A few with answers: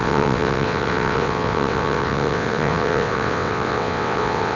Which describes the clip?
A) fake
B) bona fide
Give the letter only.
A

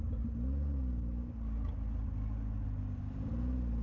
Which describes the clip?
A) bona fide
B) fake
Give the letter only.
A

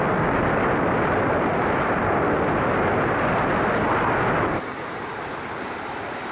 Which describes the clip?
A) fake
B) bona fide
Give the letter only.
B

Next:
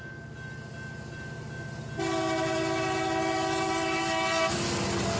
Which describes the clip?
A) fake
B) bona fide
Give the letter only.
B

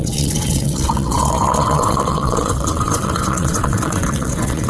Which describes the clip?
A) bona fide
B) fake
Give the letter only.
B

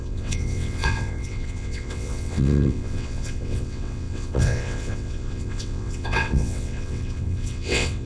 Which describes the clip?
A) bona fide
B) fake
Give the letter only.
B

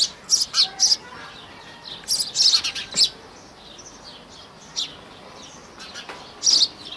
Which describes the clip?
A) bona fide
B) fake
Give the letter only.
A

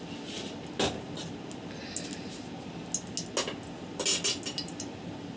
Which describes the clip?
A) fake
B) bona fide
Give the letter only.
B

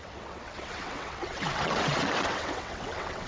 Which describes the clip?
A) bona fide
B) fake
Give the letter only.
B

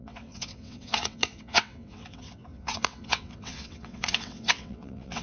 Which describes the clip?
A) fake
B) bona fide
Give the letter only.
A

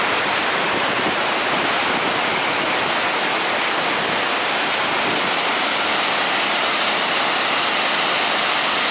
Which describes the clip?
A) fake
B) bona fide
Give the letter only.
B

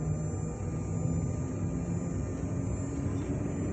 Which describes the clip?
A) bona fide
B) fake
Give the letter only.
A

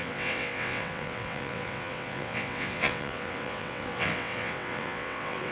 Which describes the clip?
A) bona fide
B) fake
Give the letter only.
B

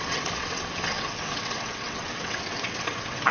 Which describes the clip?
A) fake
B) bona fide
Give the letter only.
A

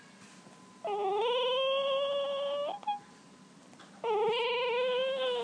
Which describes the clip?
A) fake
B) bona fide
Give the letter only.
B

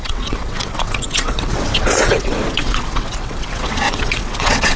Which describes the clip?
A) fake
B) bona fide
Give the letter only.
A